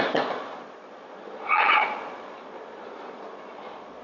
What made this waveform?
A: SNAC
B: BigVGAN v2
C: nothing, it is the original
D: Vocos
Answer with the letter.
D